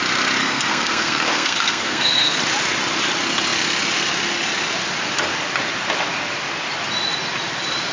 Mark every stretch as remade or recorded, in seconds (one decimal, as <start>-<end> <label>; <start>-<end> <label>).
0.0-0.4 recorded; 0.4-2.4 remade; 2.4-7.9 recorded